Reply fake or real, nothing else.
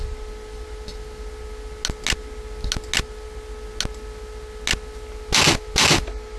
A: real